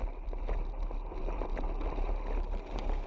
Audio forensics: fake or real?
real